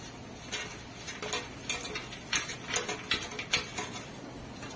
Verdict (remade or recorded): recorded